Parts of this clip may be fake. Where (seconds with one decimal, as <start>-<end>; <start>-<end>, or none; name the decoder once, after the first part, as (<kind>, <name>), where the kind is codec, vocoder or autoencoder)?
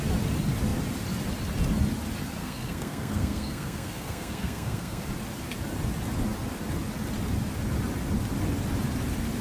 2.4-5.0 (codec, SNAC)